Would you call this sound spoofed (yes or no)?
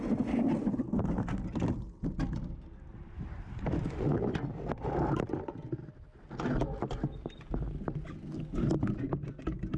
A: no